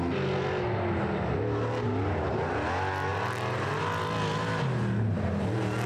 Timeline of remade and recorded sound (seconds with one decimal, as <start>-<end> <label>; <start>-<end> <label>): 0.0-5.9 recorded